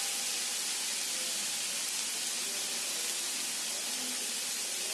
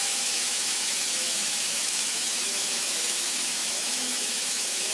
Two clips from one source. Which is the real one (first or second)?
first